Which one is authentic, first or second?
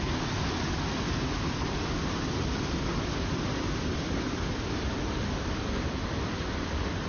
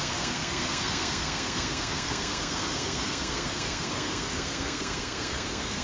first